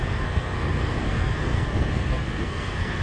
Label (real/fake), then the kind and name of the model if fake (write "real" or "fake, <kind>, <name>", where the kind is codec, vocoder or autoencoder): fake, codec, SNAC